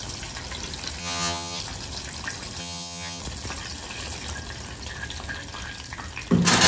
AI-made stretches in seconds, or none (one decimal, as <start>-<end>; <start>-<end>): 1.0-1.6; 2.6-3.2